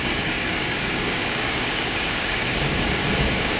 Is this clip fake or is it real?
fake